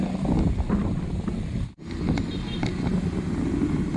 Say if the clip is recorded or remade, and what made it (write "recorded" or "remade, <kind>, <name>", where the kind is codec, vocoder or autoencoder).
recorded